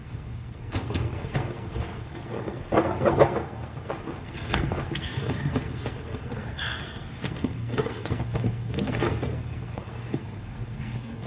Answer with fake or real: fake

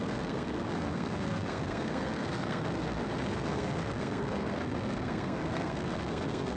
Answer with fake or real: fake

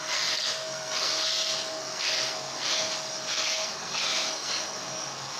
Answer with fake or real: fake